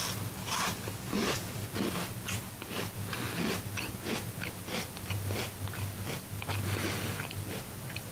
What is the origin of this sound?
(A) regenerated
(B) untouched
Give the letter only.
B